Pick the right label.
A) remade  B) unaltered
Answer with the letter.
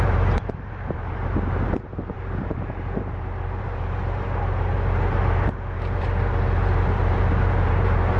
A